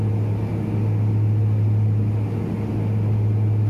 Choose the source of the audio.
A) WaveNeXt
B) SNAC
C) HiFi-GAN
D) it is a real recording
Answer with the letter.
D